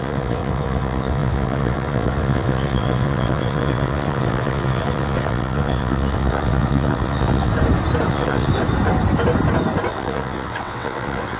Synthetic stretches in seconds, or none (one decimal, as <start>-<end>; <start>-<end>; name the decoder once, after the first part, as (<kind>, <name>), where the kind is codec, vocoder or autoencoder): 0.0-7.5 (vocoder, WaveNeXt); 8.1-8.5; 9.9-11.4